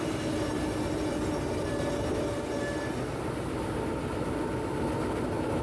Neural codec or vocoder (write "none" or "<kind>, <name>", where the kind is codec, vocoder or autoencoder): none